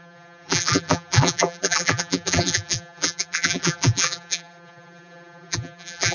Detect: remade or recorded remade